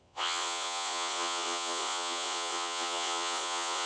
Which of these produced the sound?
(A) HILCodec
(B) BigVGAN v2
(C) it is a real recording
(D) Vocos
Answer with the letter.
D